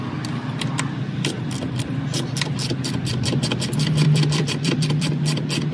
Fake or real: fake